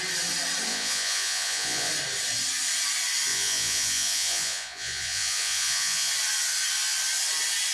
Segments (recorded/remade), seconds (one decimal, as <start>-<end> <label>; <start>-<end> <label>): 0.0-0.7 recorded; 0.7-1.9 remade; 1.9-3.3 recorded; 3.3-6.1 remade; 6.1-7.7 recorded